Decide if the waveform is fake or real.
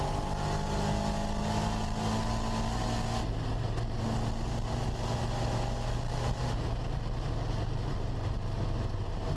real